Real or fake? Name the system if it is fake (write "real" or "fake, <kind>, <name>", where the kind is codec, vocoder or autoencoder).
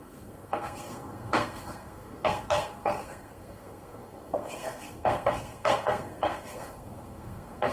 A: fake, codec, SNAC